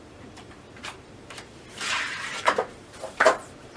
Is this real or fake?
fake